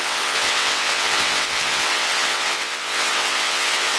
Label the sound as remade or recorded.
remade